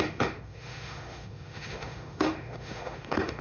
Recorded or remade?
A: remade